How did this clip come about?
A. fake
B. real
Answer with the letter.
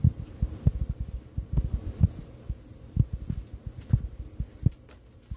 B